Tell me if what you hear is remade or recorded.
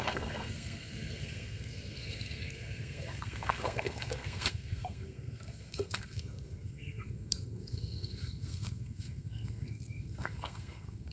remade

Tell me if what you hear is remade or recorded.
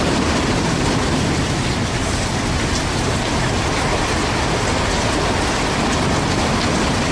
recorded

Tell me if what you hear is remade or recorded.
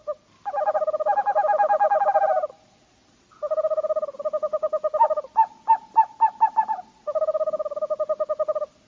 recorded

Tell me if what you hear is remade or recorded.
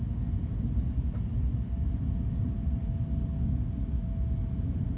recorded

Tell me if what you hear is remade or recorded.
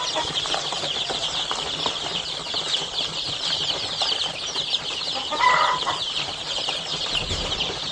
remade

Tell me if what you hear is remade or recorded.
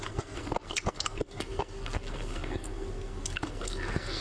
remade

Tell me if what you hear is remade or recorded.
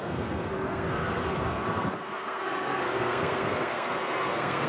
remade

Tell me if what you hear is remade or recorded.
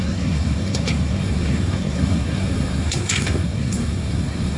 remade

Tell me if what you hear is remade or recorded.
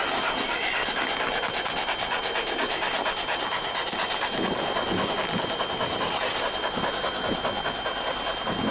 recorded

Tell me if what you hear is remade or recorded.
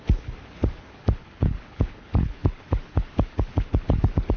remade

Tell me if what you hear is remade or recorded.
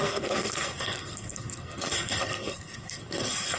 remade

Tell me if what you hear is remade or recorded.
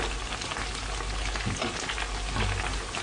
recorded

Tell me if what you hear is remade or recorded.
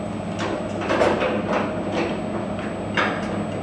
recorded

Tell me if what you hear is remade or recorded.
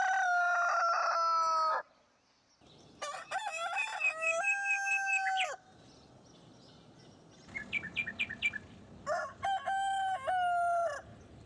recorded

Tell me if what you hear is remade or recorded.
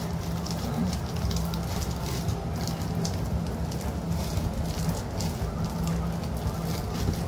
recorded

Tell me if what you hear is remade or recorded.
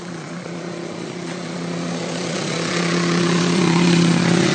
remade